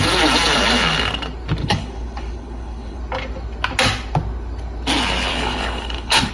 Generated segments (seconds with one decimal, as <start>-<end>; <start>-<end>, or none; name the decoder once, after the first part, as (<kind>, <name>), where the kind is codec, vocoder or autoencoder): 1.6-3.0 (codec, HILCodec); 5.3-6.3